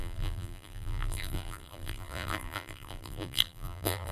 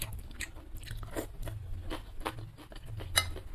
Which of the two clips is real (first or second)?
second